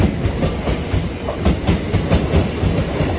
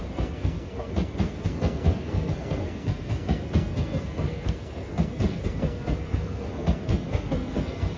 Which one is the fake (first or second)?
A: second